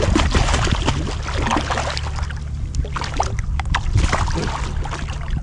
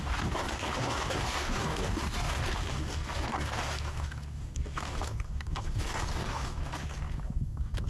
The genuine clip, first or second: first